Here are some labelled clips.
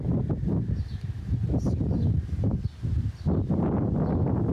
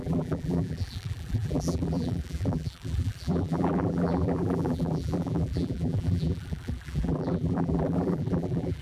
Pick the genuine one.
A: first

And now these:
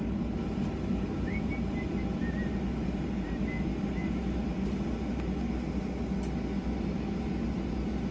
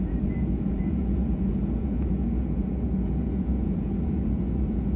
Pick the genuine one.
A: first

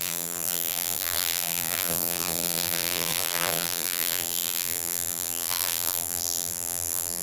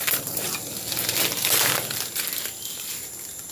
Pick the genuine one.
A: second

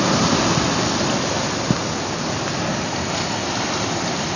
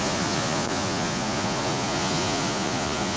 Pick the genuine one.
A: first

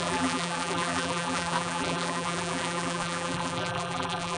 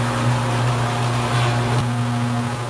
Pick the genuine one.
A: second